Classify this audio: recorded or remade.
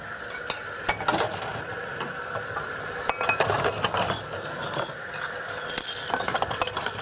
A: recorded